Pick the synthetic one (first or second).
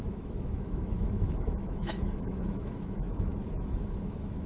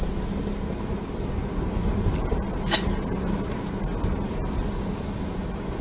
first